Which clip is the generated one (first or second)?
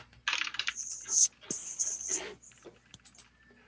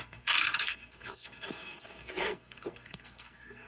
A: second